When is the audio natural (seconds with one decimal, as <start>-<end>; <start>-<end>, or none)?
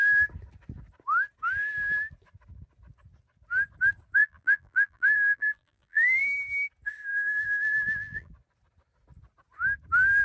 0.0-4.2; 6.2-7.1; 8.3-10.2